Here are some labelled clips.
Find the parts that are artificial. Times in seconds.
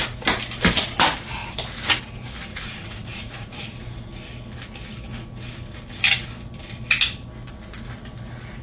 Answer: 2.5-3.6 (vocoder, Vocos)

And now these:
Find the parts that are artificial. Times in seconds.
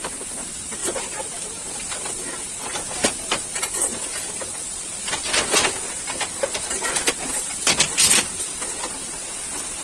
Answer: none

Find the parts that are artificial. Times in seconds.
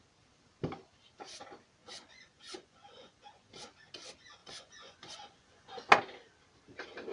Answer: 1.8-3.5 (vocoder, Vocos); 4.4-5.9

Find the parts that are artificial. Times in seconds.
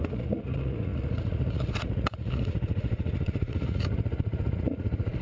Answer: 0.0-5.2 (vocoder, Vocos)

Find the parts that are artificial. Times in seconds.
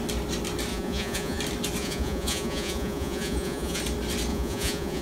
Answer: 0.7-1.4 (vocoder, Vocos); 1.8-3.8; 4.3-5.0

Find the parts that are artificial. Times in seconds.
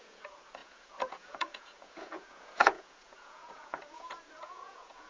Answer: 0.0-5.1 (vocoder, Vocos)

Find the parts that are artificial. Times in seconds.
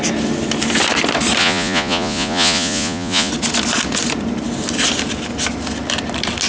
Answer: 1.4-3.3 (vocoder, Vocos)